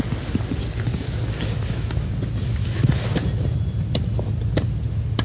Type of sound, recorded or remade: recorded